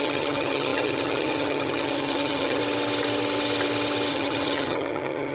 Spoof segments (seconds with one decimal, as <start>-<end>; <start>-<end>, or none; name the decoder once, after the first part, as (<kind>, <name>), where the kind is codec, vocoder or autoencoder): 0.0-2.6 (vocoder, HiFi-GAN); 4.1-5.3

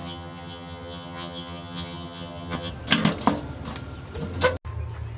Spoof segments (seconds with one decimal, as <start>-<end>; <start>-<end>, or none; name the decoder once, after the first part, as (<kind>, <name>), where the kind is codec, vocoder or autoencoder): 0.0-2.7 (vocoder, HiFi-GAN)

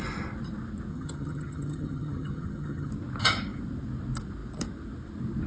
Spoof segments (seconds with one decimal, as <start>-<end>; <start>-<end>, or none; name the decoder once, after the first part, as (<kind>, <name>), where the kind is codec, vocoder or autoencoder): 0.9-2.9 (vocoder, HiFi-GAN)